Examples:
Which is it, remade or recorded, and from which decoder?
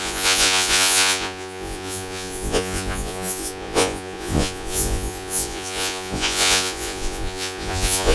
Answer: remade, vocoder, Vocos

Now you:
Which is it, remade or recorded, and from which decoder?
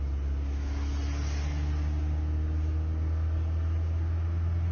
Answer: recorded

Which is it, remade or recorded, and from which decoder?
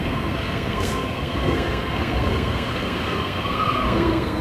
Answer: remade, codec, SNAC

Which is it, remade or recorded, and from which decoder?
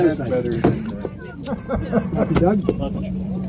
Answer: remade, vocoder, BigVGAN v2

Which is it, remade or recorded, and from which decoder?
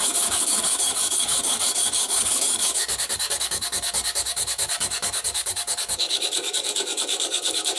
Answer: remade, codec, DAC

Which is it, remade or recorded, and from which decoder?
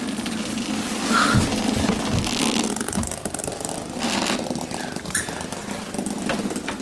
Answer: recorded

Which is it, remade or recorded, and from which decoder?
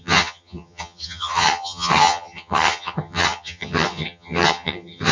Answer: remade, vocoder, HiFi-GAN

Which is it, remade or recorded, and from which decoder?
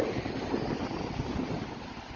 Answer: recorded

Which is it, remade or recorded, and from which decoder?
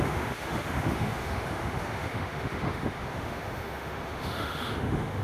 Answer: remade, autoencoder, DAC-VAE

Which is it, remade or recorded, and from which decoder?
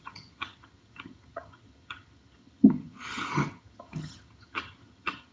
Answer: remade, vocoder, HiFi-GAN